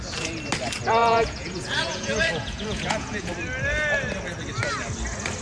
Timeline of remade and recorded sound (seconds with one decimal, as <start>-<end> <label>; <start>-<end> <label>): 0.0-1.0 recorded; 1.0-3.3 remade; 3.3-5.4 recorded